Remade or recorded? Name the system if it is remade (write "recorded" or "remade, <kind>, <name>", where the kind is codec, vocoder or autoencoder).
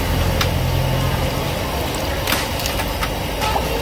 recorded